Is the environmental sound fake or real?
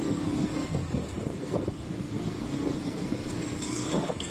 fake